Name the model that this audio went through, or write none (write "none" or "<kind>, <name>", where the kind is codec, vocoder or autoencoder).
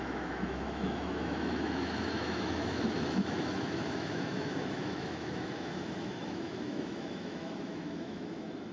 autoencoder, DAC-VAE